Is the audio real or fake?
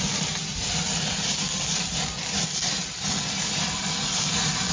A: real